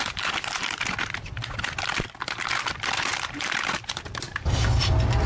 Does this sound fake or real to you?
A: real